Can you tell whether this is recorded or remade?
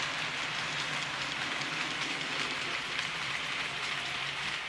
recorded